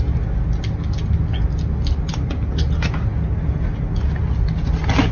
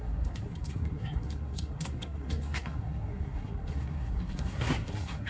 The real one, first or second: first